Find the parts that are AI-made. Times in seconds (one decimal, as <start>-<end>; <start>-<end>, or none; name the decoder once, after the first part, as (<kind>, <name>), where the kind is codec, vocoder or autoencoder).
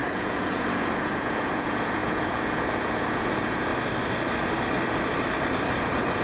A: 0.0-3.7 (vocoder, Vocos); 5.8-6.2